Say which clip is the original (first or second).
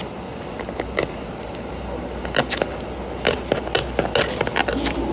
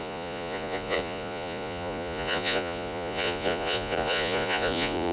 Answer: first